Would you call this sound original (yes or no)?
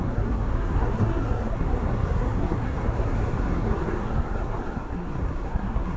no